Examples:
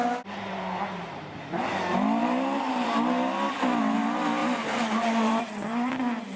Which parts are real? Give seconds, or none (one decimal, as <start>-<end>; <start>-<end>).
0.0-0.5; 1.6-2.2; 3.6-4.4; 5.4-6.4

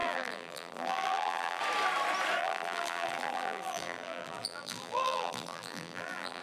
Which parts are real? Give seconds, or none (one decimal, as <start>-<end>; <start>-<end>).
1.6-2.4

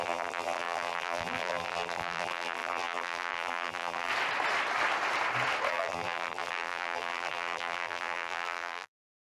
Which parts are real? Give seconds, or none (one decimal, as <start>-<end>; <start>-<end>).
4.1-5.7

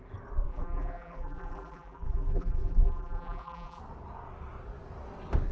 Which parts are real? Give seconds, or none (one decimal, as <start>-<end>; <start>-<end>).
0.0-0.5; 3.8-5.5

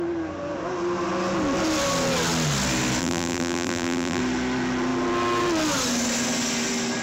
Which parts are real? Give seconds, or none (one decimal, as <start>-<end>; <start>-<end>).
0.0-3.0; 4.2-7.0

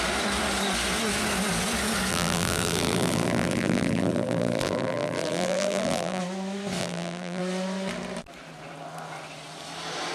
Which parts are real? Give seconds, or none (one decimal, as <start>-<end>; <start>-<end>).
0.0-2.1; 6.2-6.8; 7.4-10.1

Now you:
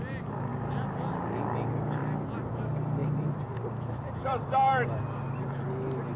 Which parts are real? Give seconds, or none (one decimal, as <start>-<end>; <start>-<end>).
0.0-3.0; 5.0-6.2

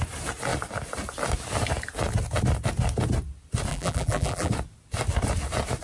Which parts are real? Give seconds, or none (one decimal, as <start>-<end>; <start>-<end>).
0.0-3.7; 4.5-5.8